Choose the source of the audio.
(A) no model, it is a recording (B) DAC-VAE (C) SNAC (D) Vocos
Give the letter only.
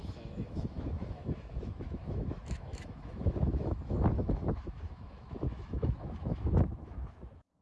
B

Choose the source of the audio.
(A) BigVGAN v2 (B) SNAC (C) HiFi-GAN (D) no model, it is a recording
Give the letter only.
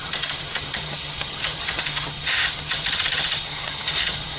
C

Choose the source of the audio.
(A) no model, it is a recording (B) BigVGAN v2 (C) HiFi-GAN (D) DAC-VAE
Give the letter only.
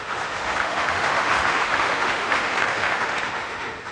D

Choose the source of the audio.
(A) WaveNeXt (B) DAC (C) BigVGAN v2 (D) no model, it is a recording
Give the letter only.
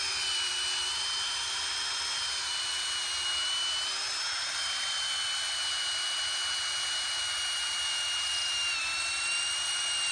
D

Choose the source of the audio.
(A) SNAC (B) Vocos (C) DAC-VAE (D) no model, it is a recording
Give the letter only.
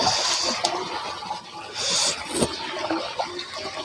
D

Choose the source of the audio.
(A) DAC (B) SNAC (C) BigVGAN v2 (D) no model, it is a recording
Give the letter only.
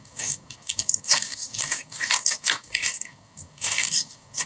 A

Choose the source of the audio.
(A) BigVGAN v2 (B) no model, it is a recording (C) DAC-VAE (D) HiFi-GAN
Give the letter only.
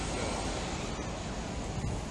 B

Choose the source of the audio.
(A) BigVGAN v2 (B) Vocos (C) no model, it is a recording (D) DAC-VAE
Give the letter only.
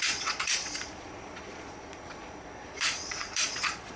B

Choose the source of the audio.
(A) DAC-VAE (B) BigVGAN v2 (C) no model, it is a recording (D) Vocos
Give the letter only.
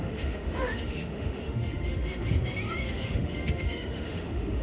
A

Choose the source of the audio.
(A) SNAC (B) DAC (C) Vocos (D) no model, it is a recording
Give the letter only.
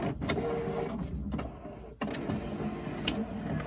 D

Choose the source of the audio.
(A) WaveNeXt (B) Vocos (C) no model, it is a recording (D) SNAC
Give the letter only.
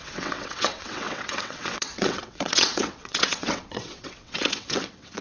A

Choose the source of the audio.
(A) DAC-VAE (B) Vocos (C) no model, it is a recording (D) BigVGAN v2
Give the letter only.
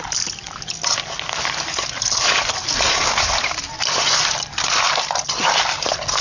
C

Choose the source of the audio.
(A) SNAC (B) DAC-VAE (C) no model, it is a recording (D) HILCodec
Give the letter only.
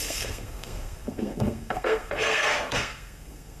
A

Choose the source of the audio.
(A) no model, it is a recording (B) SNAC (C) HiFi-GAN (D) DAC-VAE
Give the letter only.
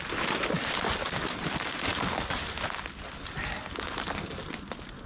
A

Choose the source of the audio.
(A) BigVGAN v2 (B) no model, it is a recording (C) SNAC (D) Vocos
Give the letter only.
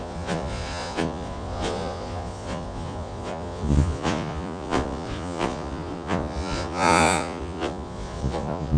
D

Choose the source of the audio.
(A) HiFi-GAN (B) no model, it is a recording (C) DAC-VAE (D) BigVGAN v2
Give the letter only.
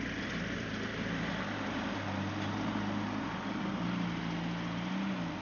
B